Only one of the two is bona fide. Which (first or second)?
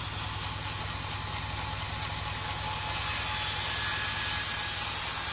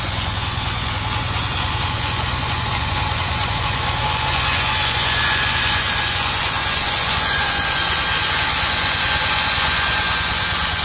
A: first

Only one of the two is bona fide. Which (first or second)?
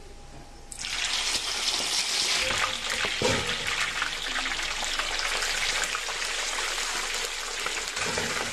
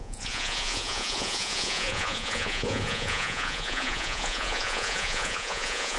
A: first